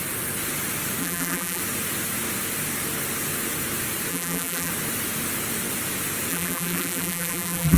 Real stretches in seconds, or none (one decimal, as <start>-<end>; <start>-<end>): 0.0-1.0; 1.6-4.1; 4.7-6.3